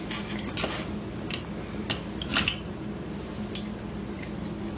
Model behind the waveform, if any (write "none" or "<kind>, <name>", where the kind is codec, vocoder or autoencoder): none